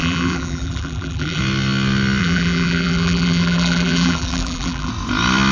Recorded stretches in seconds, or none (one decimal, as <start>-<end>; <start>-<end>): 1.4-2.2; 4.9-5.5